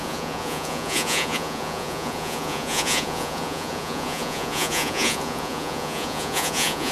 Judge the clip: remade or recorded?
remade